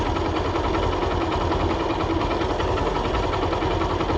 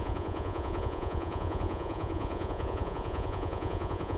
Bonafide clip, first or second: first